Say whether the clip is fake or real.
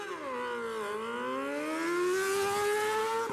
real